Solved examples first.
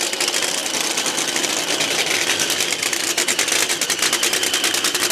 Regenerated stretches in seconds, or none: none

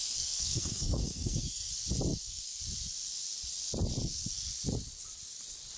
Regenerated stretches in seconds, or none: 0.0-1.7 (codec, SNAC); 2.1-2.6

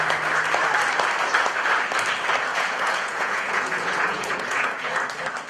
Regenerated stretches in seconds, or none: 2.5-5.0 (vocoder, Vocos)

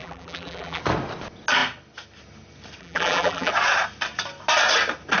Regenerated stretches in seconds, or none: 0.0-0.8 (vocoder, BigVGAN v2); 2.8-3.5

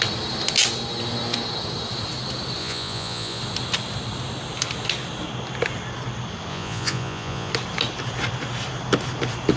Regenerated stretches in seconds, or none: 2.6-3.4 (vocoder, Vocos); 6.5-7.5